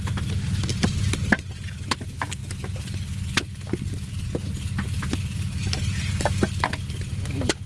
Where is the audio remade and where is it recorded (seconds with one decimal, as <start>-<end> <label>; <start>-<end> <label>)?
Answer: 0.0-0.7 recorded; 0.7-1.8 remade; 1.8-7.7 recorded